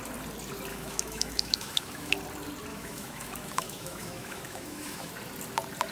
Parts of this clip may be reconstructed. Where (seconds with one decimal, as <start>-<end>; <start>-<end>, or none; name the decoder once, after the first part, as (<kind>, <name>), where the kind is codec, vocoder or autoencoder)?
0.7-2.1 (autoencoder, DAC-VAE); 2.7-5.1